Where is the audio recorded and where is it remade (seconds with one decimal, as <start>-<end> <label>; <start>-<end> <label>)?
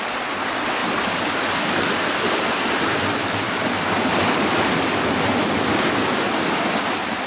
0.0-7.3 recorded